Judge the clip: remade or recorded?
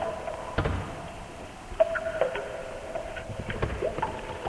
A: recorded